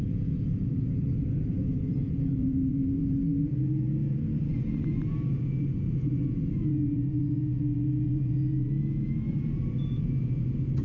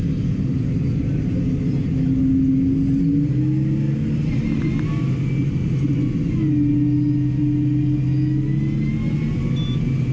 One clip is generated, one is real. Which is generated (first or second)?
first